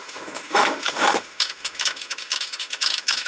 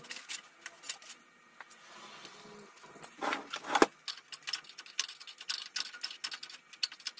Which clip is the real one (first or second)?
second